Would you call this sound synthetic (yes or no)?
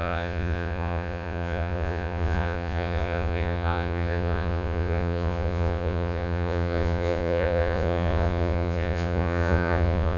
yes